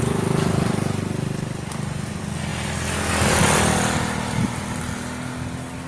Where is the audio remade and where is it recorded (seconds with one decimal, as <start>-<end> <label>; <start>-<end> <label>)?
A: 0.0-5.9 recorded